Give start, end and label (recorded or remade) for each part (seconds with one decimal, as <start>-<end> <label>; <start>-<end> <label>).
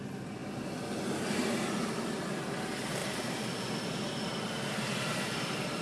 0.0-5.8 recorded